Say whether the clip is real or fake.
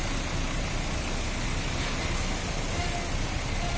real